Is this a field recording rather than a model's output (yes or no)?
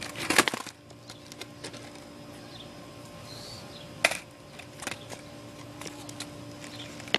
yes